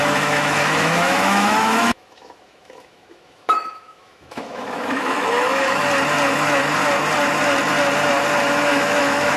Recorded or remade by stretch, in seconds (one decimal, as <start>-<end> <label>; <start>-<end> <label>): 0.0-5.8 remade; 5.8-8.4 recorded; 8.4-9.4 remade